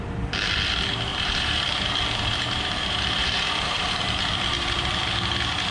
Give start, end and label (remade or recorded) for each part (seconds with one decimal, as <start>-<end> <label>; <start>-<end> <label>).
0.0-1.1 recorded; 1.1-4.2 remade; 4.2-5.7 recorded